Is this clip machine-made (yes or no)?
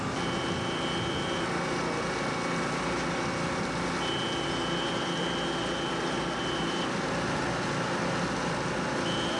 no